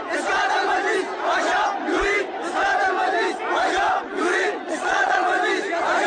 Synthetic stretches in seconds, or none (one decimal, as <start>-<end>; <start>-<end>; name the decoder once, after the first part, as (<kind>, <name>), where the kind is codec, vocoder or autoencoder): 4.1-5.3 (vocoder, Vocos)